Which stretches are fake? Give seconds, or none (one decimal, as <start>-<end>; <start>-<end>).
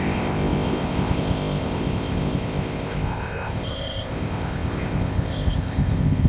0.0-6.3